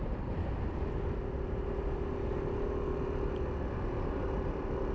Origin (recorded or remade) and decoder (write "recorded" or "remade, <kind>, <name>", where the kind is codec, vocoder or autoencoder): recorded